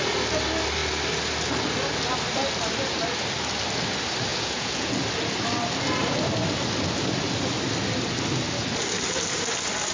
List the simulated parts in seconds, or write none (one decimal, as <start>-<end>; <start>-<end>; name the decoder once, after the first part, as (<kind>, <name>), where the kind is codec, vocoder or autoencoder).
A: 4.3-4.9 (vocoder, Vocos)